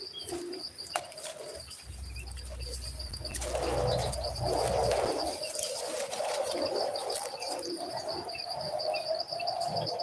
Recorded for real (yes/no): yes